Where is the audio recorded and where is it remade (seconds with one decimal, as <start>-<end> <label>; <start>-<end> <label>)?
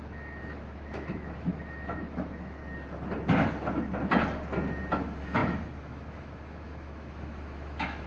0.0-2.6 remade; 2.6-4.9 recorded; 4.9-8.1 remade